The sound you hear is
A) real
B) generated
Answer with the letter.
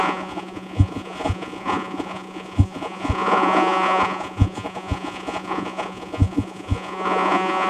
B